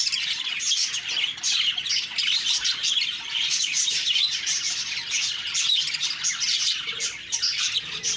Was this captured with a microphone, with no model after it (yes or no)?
yes